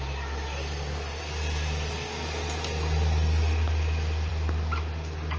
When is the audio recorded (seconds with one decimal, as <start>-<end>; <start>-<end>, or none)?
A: 0.0-5.4